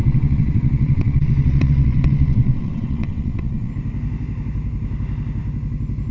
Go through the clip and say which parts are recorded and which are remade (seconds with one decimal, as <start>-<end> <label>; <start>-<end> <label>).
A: 0.0-3.7 remade; 3.7-6.1 recorded

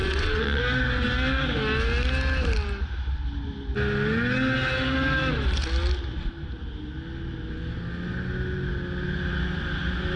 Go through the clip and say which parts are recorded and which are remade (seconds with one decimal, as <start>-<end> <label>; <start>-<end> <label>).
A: 0.0-0.6 remade; 0.6-10.2 recorded

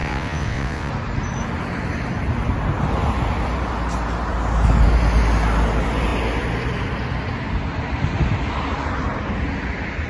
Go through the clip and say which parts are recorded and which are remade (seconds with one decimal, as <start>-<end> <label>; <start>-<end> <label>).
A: 0.0-0.9 remade; 0.9-10.1 recorded

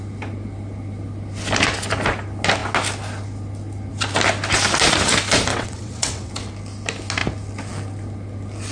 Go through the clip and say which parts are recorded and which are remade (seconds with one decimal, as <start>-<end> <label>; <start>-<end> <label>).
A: 0.0-5.5 recorded; 5.5-6.3 remade; 6.3-8.7 recorded

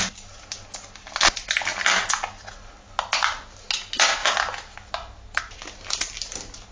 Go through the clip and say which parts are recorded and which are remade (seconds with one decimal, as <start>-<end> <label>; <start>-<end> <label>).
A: 0.0-6.7 recorded

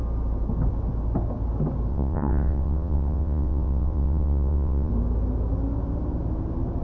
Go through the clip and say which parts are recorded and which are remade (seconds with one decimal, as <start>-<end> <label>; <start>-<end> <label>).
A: 0.0-1.9 recorded; 1.9-4.9 remade; 4.9-6.8 recorded

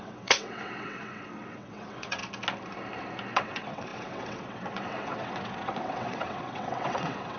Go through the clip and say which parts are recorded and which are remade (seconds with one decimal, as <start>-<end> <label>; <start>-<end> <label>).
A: 0.0-2.2 remade; 2.2-3.3 recorded; 3.3-7.4 remade

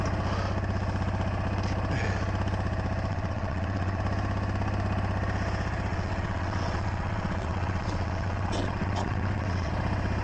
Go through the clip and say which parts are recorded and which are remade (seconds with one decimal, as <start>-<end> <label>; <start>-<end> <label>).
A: 0.0-3.1 recorded; 3.1-4.0 remade; 4.0-5.9 recorded; 5.9-9.7 remade; 9.7-10.2 recorded